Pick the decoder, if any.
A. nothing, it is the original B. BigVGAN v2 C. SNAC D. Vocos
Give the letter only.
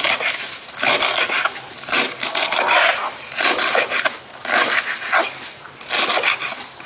A